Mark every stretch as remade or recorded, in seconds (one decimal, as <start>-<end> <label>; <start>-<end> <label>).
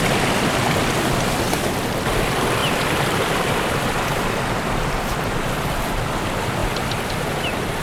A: 0.0-2.6 recorded; 2.6-3.7 remade; 3.7-6.6 recorded; 6.6-7.1 remade; 7.1-7.8 recorded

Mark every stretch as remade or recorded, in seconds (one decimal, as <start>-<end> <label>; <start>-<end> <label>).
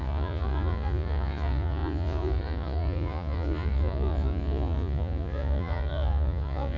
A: 0.0-6.8 remade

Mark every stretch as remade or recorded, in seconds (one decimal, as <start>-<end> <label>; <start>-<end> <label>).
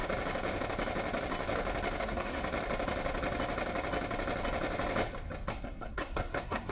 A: 0.0-2.0 recorded; 2.0-2.4 remade; 2.4-5.5 recorded; 5.5-6.7 remade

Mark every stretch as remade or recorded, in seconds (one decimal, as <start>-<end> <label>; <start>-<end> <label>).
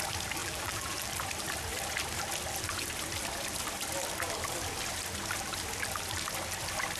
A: 0.0-0.4 recorded; 0.4-1.1 remade; 1.1-7.0 recorded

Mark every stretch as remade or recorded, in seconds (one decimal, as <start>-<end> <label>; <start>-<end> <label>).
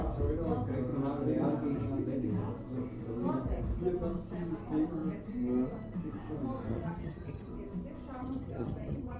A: 0.0-6.7 recorded; 6.7-7.5 remade; 7.5-8.2 recorded; 8.2-9.2 remade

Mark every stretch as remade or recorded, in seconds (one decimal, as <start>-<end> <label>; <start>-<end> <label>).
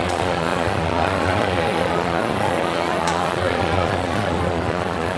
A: 0.0-5.2 remade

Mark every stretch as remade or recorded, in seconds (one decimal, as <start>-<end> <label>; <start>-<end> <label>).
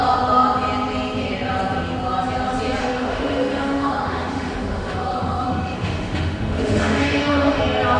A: 0.0-2.8 recorded; 2.8-7.6 remade; 7.6-8.0 recorded